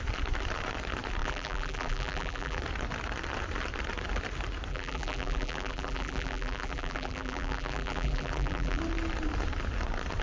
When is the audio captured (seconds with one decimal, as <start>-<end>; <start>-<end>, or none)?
0.0-1.2; 2.6-4.7; 8.8-10.2

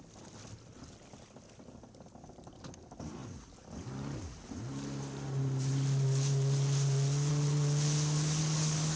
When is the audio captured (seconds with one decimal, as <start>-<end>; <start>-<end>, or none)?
0.0-8.4

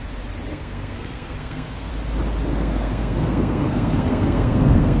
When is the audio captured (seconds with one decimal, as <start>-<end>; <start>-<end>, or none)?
0.0-0.5; 1.9-2.5

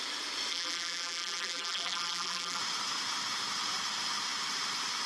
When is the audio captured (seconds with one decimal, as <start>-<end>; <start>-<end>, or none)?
0.0-0.5; 2.6-5.1

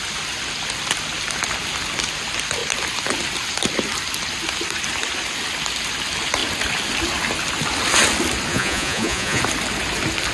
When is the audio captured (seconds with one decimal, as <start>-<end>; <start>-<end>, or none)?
0.0-8.5; 9.4-10.3

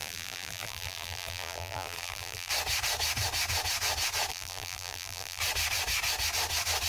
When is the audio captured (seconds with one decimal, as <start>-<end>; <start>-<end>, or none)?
2.5-4.3; 5.4-6.9

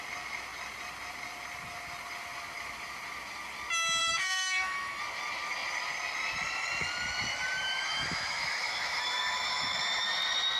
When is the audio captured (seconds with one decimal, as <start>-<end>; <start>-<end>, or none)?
0.0-4.0; 5.0-7.3; 10.1-10.6